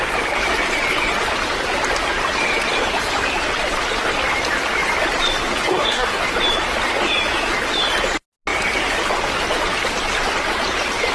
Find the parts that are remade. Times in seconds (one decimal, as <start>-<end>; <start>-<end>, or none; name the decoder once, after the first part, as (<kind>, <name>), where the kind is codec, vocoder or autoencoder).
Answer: 5.7-6.2 (codec, SNAC)